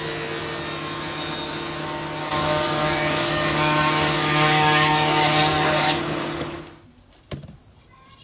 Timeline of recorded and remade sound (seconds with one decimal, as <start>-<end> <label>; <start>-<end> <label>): 0.0-2.2 recorded; 2.2-6.6 remade; 6.6-8.2 recorded